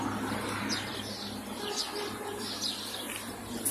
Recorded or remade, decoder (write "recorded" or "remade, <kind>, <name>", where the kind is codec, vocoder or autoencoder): recorded